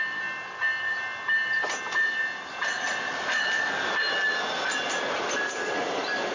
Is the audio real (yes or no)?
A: yes